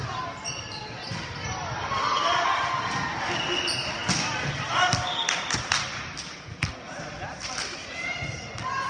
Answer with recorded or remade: recorded